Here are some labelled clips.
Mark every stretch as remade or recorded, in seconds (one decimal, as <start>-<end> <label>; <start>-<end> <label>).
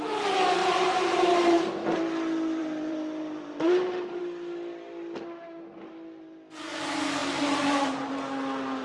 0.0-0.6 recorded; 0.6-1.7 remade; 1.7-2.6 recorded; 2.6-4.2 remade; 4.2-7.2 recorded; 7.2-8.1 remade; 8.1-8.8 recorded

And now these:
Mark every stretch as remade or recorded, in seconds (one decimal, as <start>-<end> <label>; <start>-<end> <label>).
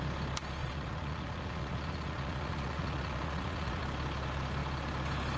0.0-0.6 recorded; 0.6-3.8 remade; 3.8-5.4 recorded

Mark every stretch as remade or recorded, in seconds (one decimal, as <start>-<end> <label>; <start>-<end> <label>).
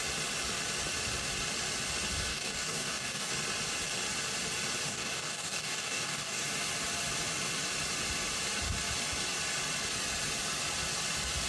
0.0-2.3 recorded; 2.3-3.3 remade; 3.3-4.9 recorded; 4.9-6.4 remade; 6.4-11.5 recorded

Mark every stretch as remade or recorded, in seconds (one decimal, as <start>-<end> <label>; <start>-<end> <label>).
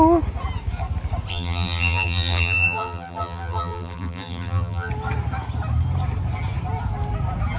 0.0-1.3 recorded; 1.3-4.9 remade; 4.9-7.6 recorded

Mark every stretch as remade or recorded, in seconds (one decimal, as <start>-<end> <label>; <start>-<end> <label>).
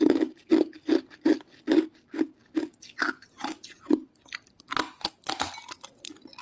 0.0-6.4 recorded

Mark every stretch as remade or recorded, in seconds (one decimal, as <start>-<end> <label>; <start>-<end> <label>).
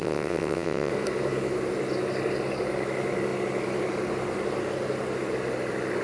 0.0-0.9 remade; 0.9-6.0 recorded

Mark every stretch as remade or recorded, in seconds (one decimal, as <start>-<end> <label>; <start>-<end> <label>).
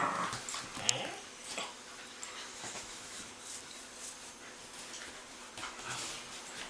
0.0-2.5 recorded; 2.5-3.2 remade; 3.2-5.6 recorded; 5.6-6.1 remade; 6.1-6.7 recorded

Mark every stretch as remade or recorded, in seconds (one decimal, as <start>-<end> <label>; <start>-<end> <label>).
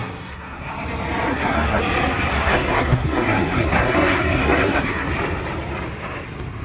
0.0-0.7 remade; 0.7-1.3 recorded; 1.3-1.8 remade; 1.8-2.3 recorded; 2.3-5.1 remade; 5.1-6.6 recorded